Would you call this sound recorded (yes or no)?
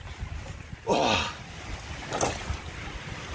yes